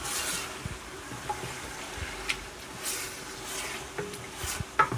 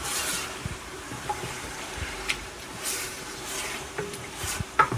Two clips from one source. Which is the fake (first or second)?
second